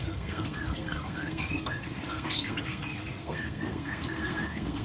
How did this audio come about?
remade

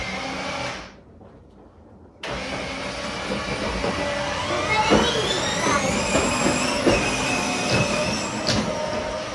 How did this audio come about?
recorded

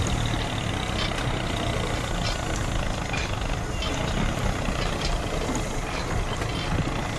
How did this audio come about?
recorded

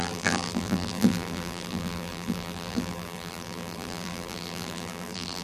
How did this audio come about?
remade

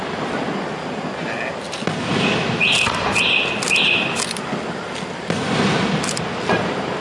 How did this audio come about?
recorded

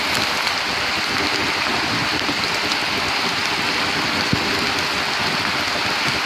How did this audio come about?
recorded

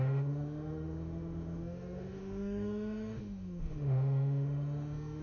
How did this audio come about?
remade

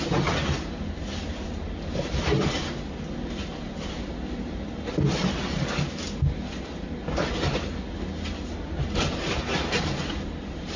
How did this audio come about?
recorded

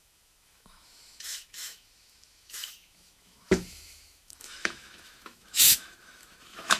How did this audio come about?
remade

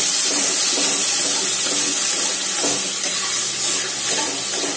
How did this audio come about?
recorded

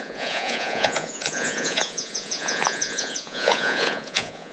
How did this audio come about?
remade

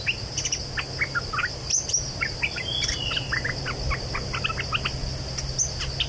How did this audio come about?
recorded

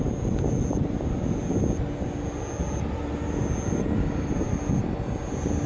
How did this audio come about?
recorded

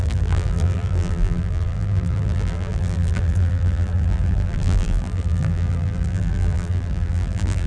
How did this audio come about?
remade